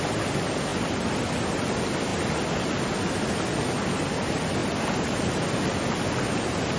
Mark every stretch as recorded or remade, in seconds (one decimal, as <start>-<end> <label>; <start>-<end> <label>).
0.0-6.8 recorded